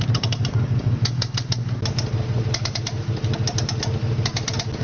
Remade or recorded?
recorded